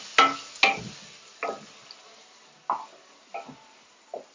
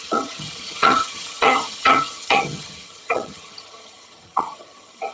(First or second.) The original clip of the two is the first